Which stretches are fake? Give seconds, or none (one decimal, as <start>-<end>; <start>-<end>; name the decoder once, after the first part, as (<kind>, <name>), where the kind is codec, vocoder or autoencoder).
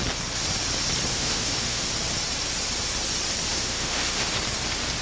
1.1-1.8 (autoencoder, DAC-VAE); 3.5-4.3